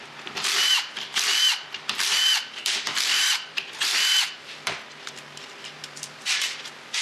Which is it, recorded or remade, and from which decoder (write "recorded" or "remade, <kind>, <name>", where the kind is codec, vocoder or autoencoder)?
remade, vocoder, BigVGAN v2